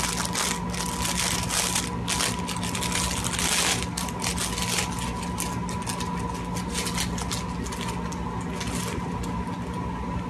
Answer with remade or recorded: recorded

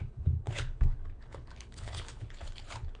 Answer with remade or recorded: remade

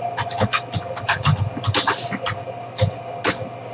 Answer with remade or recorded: recorded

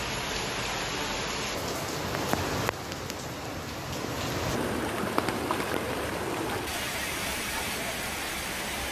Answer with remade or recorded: recorded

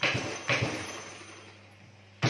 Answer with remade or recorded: recorded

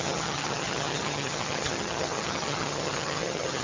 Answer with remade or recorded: remade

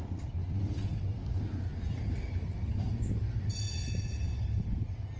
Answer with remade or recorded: recorded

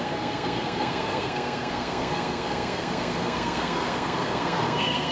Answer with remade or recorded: remade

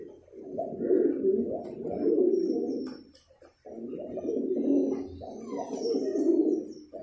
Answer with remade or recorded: recorded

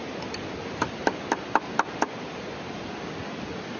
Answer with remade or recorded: recorded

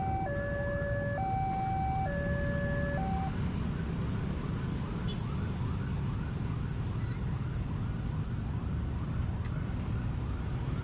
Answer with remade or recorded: recorded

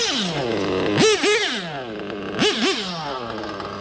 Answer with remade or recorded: recorded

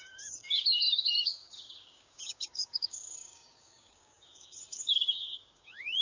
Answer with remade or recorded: remade